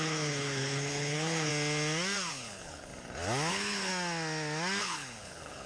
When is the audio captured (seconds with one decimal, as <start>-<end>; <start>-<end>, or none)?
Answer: 1.5-2.3; 2.9-3.5; 3.9-4.8